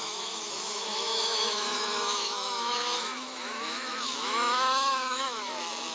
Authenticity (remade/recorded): remade